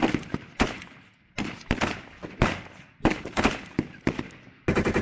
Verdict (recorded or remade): recorded